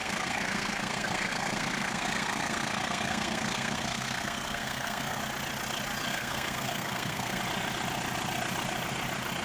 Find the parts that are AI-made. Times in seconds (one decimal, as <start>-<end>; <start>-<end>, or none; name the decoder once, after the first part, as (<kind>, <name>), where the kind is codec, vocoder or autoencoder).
0.0-5.2 (codec, SNAC); 6.1-7.4